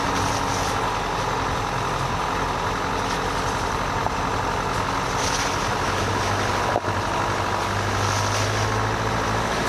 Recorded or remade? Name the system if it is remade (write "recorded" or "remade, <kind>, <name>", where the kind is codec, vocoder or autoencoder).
recorded